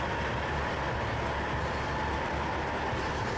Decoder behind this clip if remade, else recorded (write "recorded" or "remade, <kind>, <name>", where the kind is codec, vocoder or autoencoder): recorded